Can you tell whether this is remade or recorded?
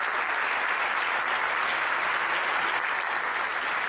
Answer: recorded